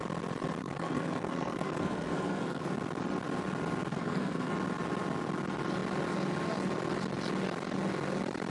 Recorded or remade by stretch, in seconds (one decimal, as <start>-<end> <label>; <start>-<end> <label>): 0.0-0.6 recorded; 0.6-2.7 remade; 2.7-3.9 recorded; 3.9-4.5 remade; 4.5-8.5 recorded